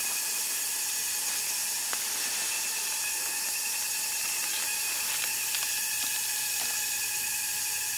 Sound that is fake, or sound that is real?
real